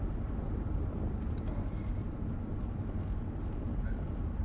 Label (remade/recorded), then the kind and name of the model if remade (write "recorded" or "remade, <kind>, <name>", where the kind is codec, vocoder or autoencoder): recorded